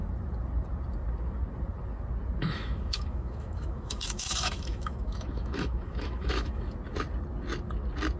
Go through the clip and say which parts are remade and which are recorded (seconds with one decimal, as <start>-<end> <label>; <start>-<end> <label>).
0.0-2.4 recorded; 2.4-6.7 remade; 6.7-8.2 recorded